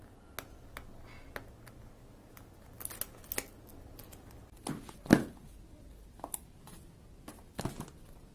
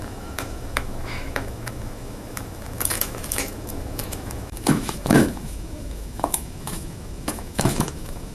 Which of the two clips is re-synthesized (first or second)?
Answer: second